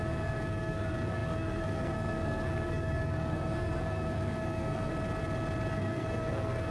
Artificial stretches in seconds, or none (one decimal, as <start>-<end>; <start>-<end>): 0.0-4.9; 5.7-6.7